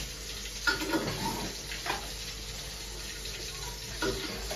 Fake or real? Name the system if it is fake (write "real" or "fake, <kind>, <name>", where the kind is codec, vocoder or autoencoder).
real